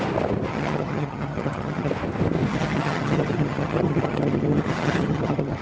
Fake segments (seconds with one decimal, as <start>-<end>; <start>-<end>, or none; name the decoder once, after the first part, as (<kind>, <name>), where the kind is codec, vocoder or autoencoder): 0.5-1.9 (vocoder, HiFi-GAN); 2.5-5.6